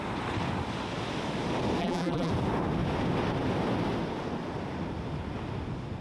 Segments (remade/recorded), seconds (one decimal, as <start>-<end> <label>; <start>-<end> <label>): 0.0-1.8 recorded; 1.8-2.3 remade; 2.3-6.0 recorded